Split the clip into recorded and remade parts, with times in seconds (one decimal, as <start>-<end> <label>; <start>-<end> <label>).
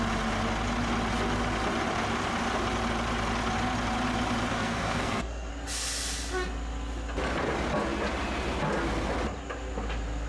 0.0-4.5 recorded; 4.5-5.5 remade; 5.5-10.3 recorded